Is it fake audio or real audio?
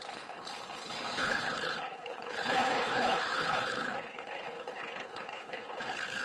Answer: fake